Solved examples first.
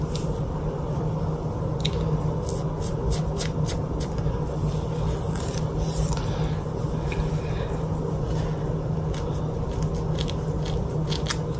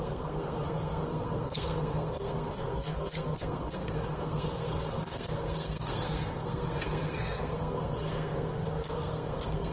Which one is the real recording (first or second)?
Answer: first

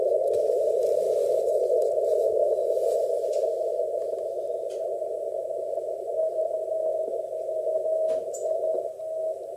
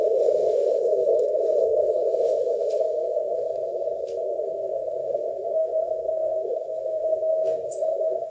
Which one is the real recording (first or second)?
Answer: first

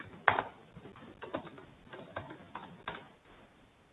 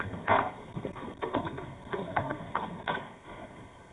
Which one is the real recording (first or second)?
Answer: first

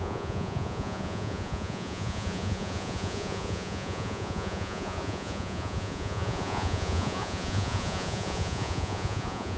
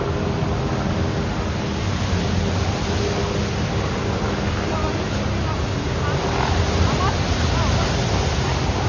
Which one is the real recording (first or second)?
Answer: second